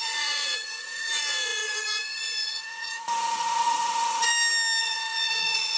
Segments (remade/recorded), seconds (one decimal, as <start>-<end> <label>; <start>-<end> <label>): 0.0-4.3 remade; 4.3-4.8 recorded; 4.8-5.8 remade